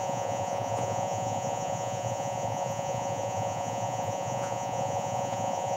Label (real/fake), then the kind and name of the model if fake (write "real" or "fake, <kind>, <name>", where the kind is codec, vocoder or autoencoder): fake, vocoder, Vocos